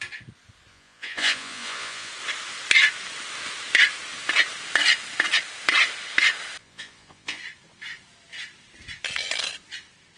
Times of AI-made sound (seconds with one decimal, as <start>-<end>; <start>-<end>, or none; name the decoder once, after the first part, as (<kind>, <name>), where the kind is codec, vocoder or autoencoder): 0.7-2.1 (vocoder, Vocos); 6.6-7.4